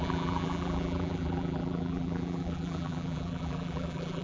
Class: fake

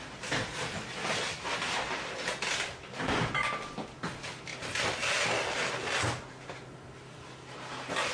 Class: real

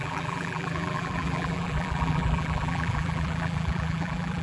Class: fake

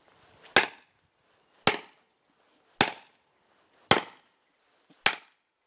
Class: real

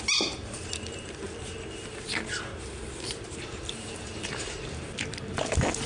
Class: fake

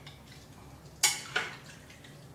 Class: real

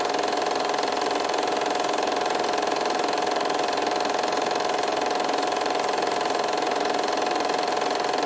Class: fake